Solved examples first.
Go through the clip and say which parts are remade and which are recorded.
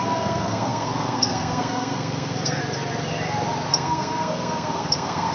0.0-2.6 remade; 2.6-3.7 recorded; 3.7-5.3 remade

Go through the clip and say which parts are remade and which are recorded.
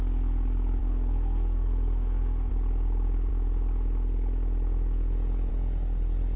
0.0-0.8 recorded; 0.8-2.5 remade; 2.5-6.4 recorded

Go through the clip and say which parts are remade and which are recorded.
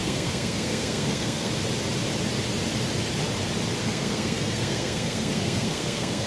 0.0-1.5 remade; 1.5-3.8 recorded; 3.8-6.3 remade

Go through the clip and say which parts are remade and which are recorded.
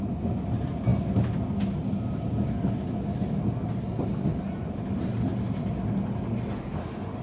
0.0-7.2 recorded